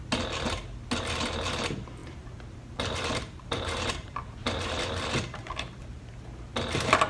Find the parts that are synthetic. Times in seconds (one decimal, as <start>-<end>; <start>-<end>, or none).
2.0-4.7; 5.4-6.1